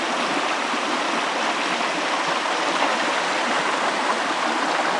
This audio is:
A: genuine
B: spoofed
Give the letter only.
A